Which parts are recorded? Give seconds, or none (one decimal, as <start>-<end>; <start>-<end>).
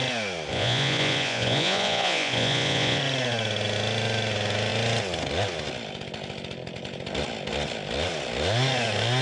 0.0-0.5; 3.0-9.2